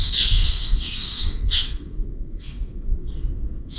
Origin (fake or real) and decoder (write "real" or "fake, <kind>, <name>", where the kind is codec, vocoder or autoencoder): fake, codec, SNAC